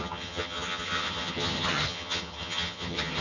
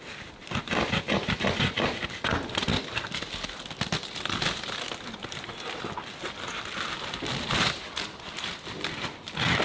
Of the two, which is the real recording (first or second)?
second